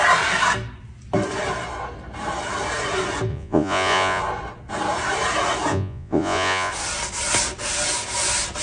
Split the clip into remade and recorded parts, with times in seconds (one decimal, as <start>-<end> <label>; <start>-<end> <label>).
0.0-3.3 recorded; 3.3-4.2 remade; 4.2-5.7 recorded; 5.7-6.7 remade; 6.7-8.6 recorded